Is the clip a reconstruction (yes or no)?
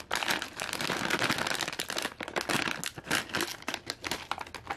no